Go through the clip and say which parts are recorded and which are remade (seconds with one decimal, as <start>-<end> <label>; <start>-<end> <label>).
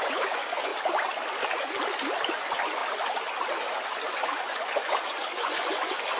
0.0-0.7 remade; 0.7-2.3 recorded; 2.3-2.8 remade; 2.8-4.1 recorded; 4.1-6.2 remade